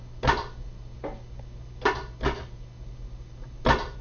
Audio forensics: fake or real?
real